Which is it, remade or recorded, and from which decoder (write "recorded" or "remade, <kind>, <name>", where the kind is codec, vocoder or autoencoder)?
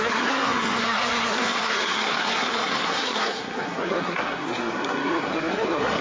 remade, codec, SNAC